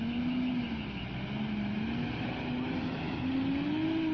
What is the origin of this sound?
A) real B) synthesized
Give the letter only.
A